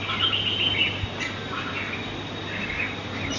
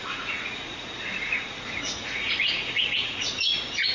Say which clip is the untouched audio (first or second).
first